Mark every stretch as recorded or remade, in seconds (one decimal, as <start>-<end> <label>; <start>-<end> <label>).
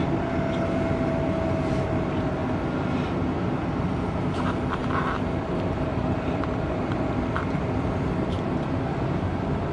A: 0.0-4.8 recorded; 4.8-8.7 remade; 8.7-9.7 recorded